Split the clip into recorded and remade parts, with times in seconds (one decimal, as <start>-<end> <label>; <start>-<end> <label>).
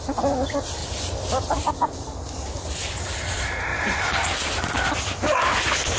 0.0-3.7 recorded; 3.7-4.2 remade; 4.2-6.0 recorded